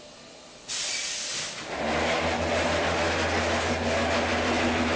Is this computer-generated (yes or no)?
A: no